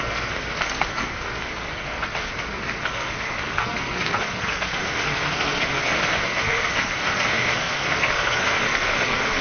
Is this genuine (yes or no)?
no